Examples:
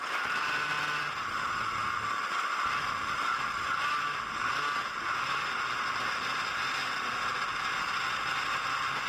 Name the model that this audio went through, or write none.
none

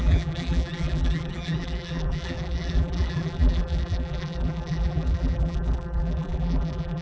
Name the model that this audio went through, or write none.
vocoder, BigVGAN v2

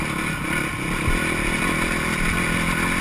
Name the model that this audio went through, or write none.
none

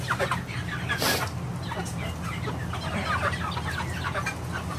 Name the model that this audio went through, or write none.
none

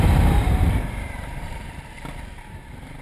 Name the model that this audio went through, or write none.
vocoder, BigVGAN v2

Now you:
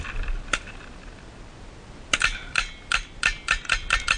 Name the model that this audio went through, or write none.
none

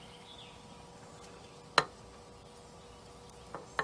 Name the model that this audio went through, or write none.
none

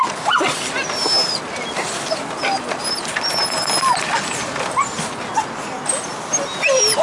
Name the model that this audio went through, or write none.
none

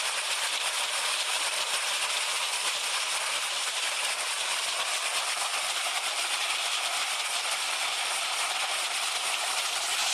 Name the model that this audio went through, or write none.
vocoder, BigVGAN v2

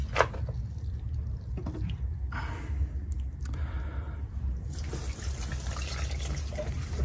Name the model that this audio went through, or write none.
none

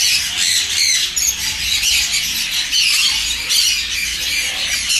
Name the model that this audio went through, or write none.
none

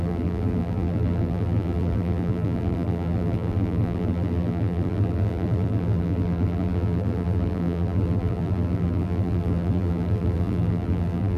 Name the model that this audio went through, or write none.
vocoder, BigVGAN v2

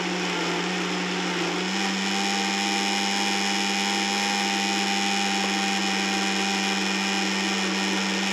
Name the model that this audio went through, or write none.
none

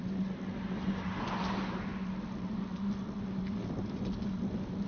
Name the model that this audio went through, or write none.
none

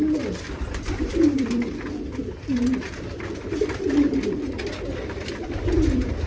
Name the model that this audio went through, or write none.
vocoder, BigVGAN v2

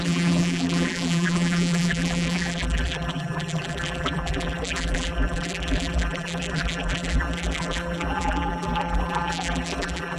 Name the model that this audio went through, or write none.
vocoder, BigVGAN v2